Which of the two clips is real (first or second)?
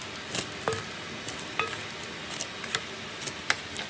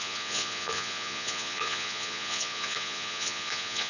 first